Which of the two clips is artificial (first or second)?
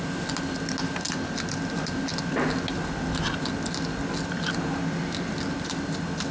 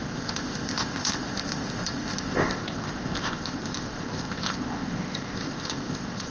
second